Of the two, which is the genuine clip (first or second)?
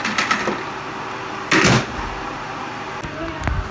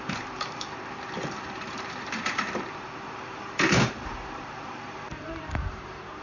first